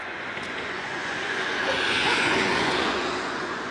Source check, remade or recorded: remade